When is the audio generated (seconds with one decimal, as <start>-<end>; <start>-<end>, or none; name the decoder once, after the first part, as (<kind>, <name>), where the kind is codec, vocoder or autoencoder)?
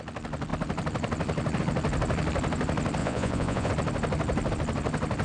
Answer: 3.0-3.7 (vocoder, Vocos)